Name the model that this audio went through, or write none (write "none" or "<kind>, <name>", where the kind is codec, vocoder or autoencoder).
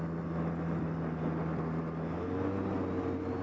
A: none